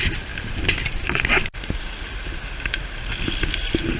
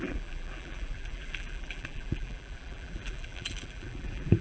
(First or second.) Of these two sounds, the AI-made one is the second